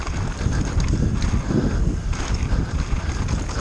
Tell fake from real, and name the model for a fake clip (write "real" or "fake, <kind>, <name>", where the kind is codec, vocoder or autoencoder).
real